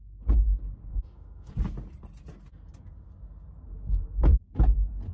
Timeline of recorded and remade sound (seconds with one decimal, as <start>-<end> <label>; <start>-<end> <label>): 0.0-0.9 recorded; 0.9-1.5 remade; 1.5-5.1 recorded